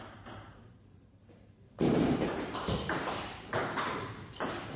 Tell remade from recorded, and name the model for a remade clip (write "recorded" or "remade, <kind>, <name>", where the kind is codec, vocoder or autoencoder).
remade, vocoder, BigVGAN v2